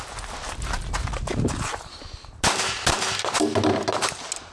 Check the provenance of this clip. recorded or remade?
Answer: recorded